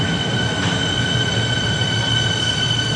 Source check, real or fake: real